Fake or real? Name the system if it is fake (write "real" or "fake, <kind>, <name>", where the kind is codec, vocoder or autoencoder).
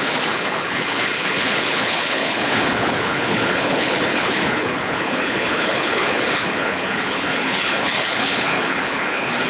fake, codec, HILCodec